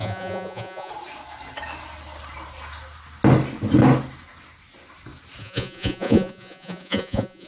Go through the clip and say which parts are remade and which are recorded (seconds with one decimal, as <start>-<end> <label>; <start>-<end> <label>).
0.0-0.9 remade; 0.9-5.4 recorded; 5.4-7.5 remade